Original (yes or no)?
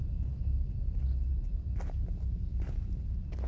yes